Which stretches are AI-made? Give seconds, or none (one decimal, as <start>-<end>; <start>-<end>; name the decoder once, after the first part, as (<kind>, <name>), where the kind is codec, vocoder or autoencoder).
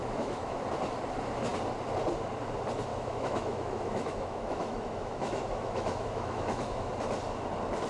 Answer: 0.0-0.6 (autoencoder, DAC-VAE); 2.9-6.9